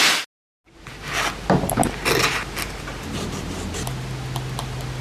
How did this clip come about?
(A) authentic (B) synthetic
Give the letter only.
A